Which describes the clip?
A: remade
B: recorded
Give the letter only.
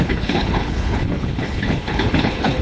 A